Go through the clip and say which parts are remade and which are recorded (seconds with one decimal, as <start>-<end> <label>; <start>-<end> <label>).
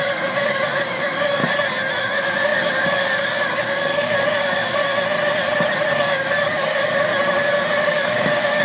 0.0-1.4 remade; 1.4-2.0 recorded; 2.0-4.8 remade; 4.8-5.9 recorded; 5.9-7.1 remade; 7.1-7.8 recorded; 7.8-8.6 remade